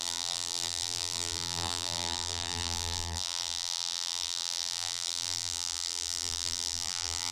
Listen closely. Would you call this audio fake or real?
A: fake